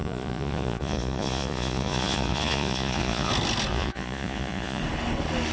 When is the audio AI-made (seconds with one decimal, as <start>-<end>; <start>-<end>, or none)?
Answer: 0.0-3.3; 3.7-4.8